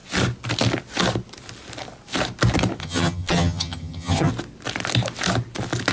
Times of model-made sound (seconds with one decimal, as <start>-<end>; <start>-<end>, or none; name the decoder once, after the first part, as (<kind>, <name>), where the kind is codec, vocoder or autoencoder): 2.8-4.3 (vocoder, HiFi-GAN)